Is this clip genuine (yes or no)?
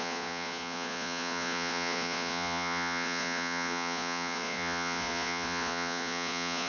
no